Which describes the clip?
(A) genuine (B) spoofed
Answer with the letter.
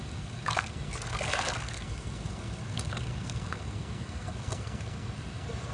B